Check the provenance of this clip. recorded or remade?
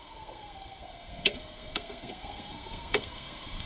remade